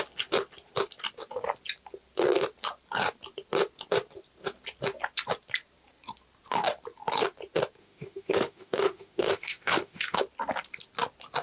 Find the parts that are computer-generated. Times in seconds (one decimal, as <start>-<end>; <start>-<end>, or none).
7.8-10.2